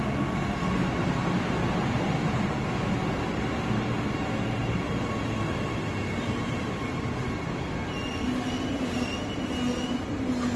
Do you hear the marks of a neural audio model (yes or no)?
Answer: no